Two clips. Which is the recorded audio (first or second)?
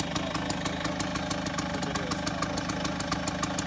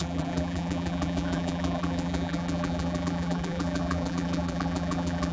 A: first